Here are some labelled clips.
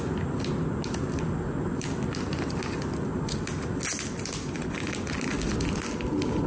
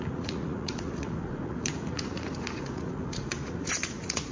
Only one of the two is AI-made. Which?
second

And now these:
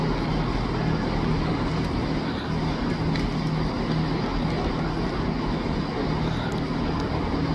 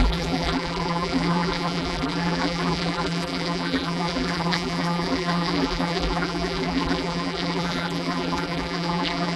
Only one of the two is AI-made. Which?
second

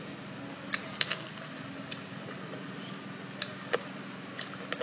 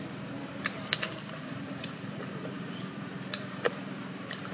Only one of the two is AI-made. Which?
second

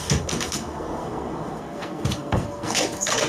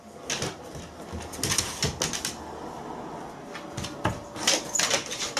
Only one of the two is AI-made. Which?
first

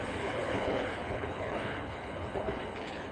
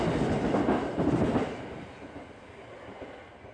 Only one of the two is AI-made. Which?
first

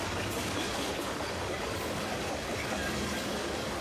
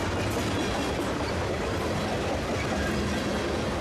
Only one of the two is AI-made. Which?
first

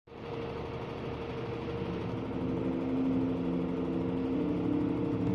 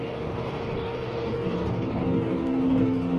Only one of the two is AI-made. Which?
second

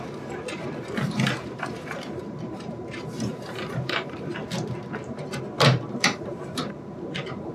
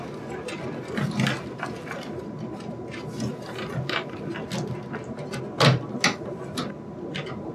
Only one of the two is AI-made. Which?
first